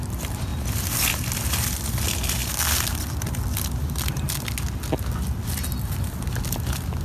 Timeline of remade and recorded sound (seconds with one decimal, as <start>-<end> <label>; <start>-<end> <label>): 0.0-7.0 recorded